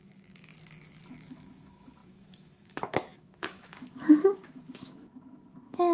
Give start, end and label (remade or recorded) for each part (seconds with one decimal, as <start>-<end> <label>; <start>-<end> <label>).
0.0-0.5 remade; 0.5-1.1 recorded; 1.1-5.9 remade